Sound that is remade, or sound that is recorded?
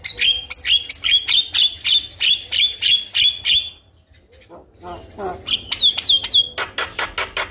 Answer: recorded